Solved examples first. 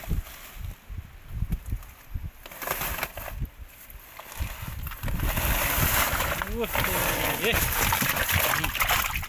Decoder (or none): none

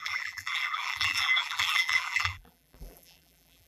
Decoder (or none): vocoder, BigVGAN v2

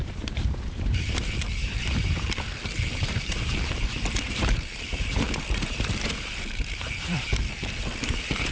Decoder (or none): vocoder, BigVGAN v2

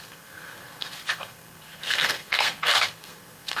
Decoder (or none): codec, SNAC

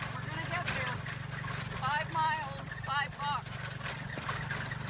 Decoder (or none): none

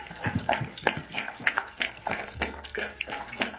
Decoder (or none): codec, SNAC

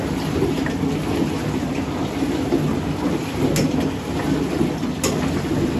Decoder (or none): none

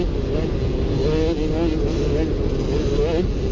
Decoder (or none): none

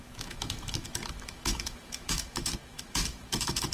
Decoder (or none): autoencoder, DAC-VAE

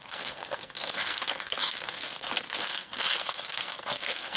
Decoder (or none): codec, SNAC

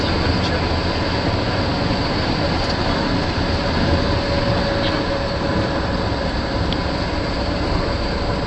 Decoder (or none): none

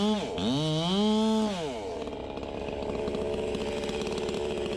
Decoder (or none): none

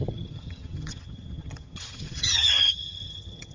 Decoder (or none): vocoder, HiFi-GAN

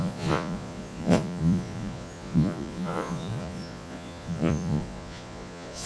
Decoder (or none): vocoder, Vocos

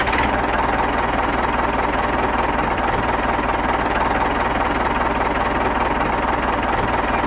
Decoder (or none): none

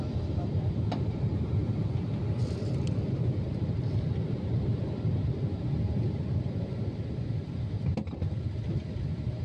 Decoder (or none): vocoder, BigVGAN v2